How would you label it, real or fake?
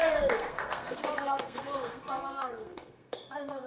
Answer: fake